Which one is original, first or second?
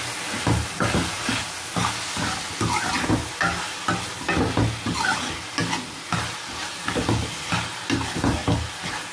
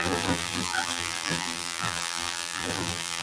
first